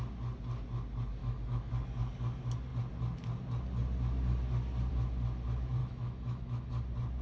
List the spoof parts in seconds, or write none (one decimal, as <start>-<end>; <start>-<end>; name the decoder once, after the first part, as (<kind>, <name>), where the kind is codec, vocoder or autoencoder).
1.2-1.7 (autoencoder, DAC-VAE); 5.8-6.7